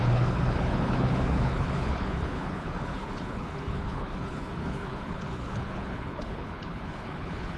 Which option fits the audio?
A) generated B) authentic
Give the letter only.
A